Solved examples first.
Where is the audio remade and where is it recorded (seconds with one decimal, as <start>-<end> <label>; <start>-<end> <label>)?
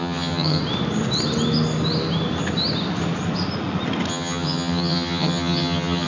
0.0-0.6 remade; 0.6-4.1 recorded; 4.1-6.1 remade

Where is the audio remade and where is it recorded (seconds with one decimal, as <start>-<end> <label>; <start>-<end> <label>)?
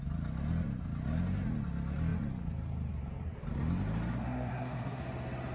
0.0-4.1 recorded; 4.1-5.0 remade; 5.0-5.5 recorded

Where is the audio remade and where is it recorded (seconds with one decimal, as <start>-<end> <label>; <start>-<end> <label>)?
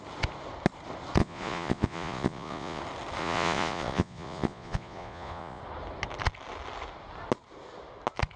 0.0-1.2 recorded; 1.2-2.8 remade; 2.8-3.2 recorded; 3.2-5.6 remade; 5.6-8.4 recorded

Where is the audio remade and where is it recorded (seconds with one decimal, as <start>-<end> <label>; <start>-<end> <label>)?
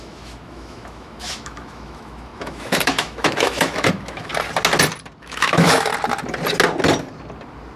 0.0-4.3 remade; 4.3-5.2 recorded; 5.2-5.9 remade; 5.9-7.8 recorded